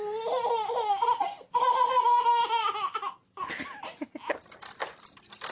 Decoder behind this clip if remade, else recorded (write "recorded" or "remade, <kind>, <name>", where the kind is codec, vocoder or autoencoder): recorded